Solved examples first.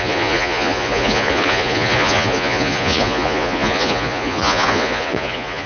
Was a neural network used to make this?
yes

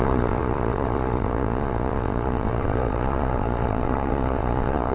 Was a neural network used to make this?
yes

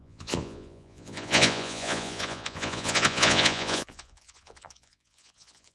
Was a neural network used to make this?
yes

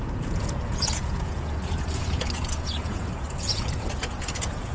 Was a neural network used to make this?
yes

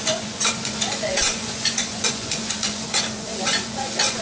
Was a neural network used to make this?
yes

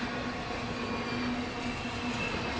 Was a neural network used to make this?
no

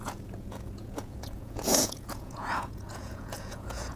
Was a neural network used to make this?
yes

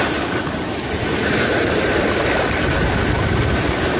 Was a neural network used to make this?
no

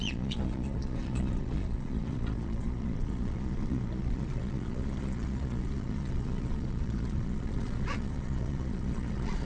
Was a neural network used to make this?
yes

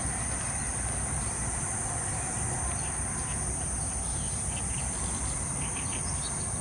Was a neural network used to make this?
no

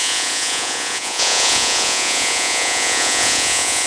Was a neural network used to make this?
yes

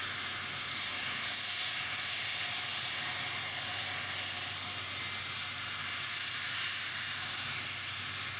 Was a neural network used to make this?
no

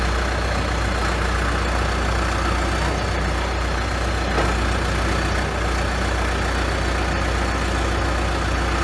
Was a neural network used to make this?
no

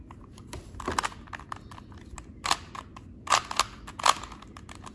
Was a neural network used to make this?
no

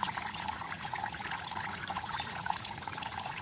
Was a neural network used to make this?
yes